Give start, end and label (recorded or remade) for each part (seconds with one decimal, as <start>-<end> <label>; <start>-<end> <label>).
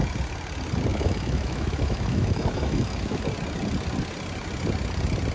0.0-0.9 recorded; 0.9-3.2 remade; 3.2-5.3 recorded